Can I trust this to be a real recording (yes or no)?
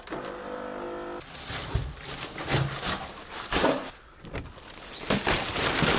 yes